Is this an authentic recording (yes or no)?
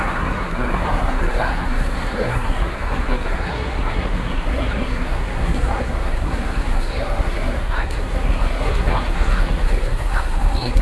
no